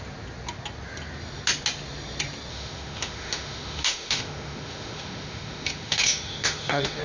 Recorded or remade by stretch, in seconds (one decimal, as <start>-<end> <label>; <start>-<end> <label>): 0.0-2.5 recorded; 2.5-7.0 remade